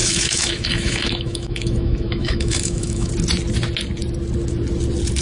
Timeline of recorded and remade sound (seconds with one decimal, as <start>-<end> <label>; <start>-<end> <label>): 0.0-3.1 remade; 3.1-5.2 recorded